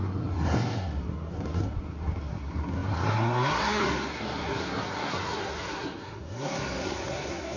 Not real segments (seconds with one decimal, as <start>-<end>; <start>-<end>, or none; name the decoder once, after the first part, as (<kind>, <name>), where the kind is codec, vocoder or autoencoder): 0.0-7.6 (codec, SNAC)